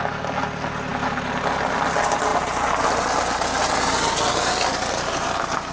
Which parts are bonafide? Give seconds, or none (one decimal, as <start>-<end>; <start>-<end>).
0.0-5.7